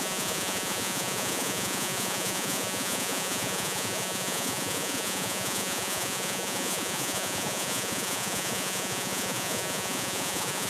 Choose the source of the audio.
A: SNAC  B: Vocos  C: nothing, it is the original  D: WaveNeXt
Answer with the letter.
B